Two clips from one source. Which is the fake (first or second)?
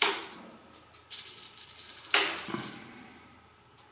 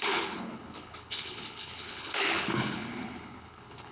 second